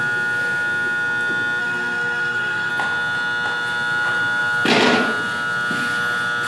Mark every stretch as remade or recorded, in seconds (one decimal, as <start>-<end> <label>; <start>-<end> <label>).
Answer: 0.0-1.6 recorded; 1.6-2.7 remade; 2.7-6.5 recorded